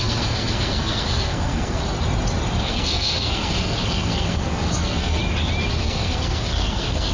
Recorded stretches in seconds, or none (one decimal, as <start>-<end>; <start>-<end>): 1.8-2.6; 5.2-5.8